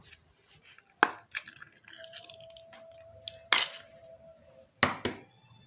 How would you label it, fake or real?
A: real